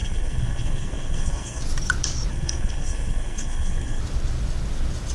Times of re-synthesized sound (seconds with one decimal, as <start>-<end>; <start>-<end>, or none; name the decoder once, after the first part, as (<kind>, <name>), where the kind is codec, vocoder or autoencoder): 0.0-1.6 (codec, SNAC); 2.3-4.0